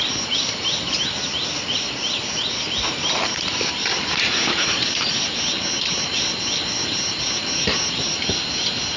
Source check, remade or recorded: recorded